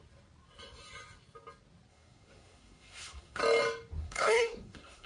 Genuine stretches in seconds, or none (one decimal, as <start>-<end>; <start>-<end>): 0.0-1.9; 3.4-4.0